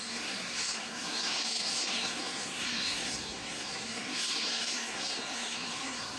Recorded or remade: remade